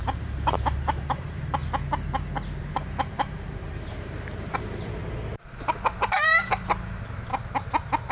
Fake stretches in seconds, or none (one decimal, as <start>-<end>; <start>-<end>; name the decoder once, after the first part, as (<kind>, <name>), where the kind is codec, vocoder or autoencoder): 0.0-1.6 (vocoder, BigVGAN v2); 2.6-7.3